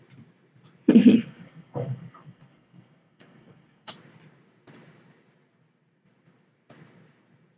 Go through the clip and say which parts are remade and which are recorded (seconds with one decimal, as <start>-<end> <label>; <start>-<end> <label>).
0.0-1.0 recorded; 1.0-3.9 remade; 3.9-7.6 recorded